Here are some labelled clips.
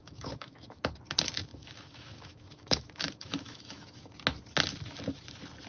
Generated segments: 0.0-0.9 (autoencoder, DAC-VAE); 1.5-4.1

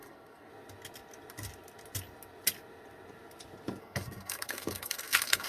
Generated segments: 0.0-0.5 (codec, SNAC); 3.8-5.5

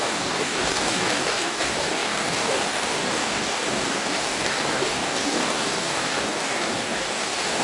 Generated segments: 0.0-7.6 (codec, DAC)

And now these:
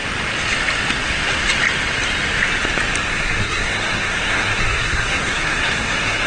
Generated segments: 3.1-6.3 (codec, SNAC)